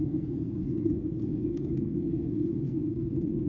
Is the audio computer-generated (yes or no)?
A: yes